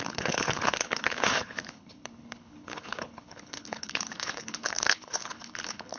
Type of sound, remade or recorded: remade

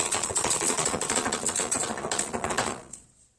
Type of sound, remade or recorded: remade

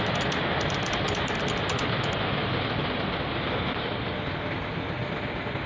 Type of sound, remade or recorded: recorded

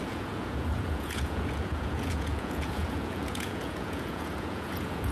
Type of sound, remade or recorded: remade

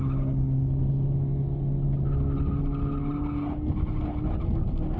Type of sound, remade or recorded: recorded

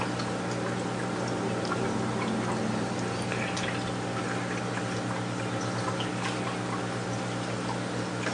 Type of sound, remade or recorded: recorded